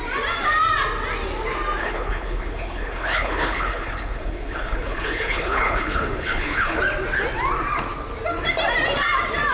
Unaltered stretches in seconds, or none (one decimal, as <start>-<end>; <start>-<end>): 0.0-1.8; 6.8-9.5